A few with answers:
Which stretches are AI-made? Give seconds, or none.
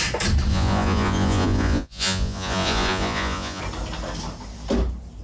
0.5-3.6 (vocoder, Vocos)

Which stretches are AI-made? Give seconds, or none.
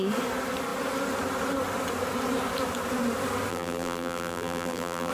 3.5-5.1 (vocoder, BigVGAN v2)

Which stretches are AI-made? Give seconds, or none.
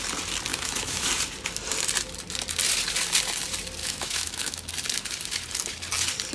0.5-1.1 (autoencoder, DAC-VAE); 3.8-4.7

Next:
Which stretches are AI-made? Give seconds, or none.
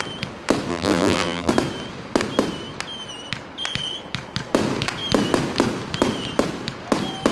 0.7-1.5 (vocoder, BigVGAN v2)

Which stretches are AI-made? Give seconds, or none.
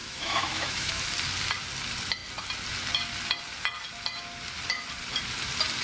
0.0-1.0 (autoencoder, DAC-VAE)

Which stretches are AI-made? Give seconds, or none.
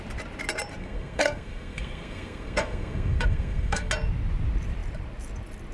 0.8-3.9 (codec, SNAC)